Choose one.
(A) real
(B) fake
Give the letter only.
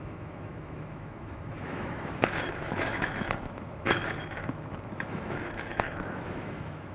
B